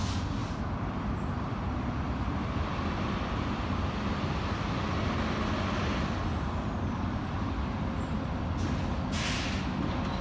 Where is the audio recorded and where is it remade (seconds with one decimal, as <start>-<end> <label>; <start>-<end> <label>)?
0.0-0.4 recorded; 0.4-4.6 remade; 4.6-5.9 recorded; 5.9-8.5 remade; 8.5-10.2 recorded